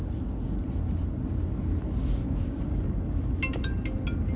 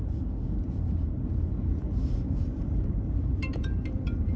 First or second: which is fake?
second